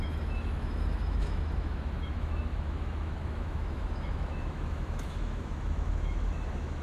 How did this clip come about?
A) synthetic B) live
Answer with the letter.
A